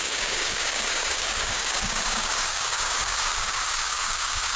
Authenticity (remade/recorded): remade